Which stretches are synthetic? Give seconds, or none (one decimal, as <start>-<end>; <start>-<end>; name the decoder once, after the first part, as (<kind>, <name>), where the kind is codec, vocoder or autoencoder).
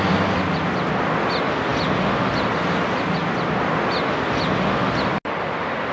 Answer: none